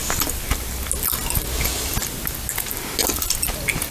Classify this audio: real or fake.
real